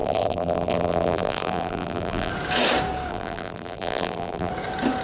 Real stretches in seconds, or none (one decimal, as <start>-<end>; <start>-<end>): 2.3-3.1; 4.5-5.0